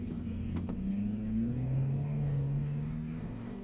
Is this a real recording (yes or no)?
no